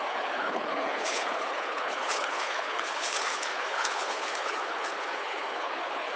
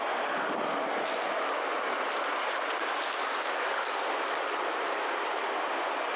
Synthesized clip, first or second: first